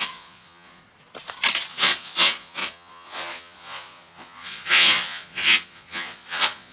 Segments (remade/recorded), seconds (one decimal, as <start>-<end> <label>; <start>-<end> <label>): 0.0-0.8 remade; 0.8-1.7 recorded; 1.7-6.7 remade